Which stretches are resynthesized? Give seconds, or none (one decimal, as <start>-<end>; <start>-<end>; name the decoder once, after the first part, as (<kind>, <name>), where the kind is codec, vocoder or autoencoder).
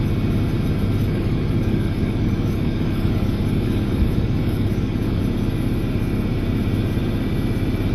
1.0-5.2 (codec, DAC)